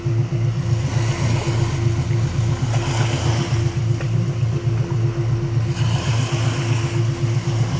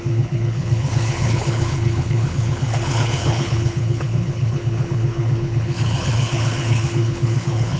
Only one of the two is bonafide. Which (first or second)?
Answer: first